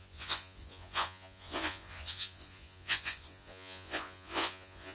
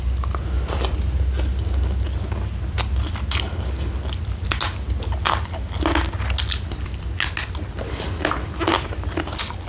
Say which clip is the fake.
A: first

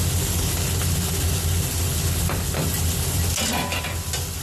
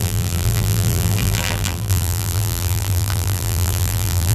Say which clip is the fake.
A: second